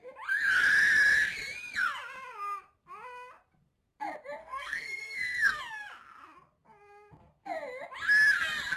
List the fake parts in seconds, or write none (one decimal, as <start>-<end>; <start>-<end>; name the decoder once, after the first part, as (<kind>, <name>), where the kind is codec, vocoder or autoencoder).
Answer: 4.4-5.6 (codec, SNAC)